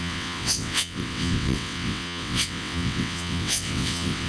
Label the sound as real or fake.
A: fake